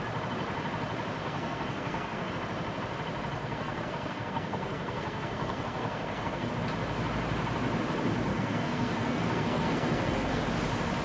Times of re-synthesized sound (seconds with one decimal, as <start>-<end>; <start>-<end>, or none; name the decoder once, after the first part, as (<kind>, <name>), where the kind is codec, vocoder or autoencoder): 1.2-2.3 (codec, SNAC); 3.4-6.5; 8.3-10.4